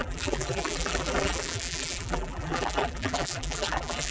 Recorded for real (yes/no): no